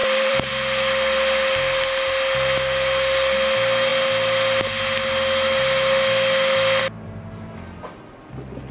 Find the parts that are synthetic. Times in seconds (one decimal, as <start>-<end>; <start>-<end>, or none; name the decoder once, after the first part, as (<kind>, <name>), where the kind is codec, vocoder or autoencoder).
0.0-0.5 (vocoder, BigVGAN v2)

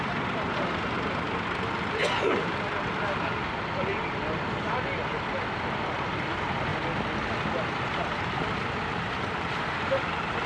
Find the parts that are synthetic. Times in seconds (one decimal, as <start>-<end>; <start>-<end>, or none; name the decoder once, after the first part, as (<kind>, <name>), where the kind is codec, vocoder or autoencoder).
none

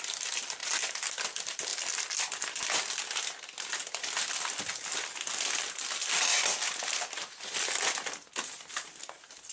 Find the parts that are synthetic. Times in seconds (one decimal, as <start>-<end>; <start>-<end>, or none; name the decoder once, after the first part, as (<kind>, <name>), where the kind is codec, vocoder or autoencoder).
none

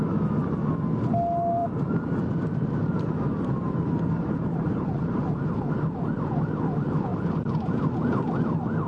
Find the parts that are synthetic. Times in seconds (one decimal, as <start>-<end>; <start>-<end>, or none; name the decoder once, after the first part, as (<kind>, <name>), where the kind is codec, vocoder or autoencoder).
1.6-5.7 (vocoder, BigVGAN v2); 7.1-8.3

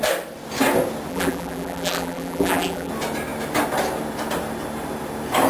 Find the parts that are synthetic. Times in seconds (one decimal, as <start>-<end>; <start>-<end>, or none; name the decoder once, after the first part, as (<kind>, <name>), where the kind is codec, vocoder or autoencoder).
1.1-2.9 (vocoder, BigVGAN v2)